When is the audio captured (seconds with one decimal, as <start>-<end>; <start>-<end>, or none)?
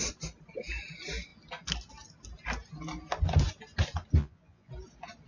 0.0-4.2; 4.7-5.3